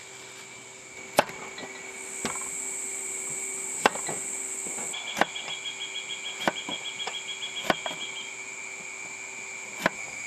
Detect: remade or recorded recorded